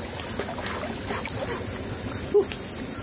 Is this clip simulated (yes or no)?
no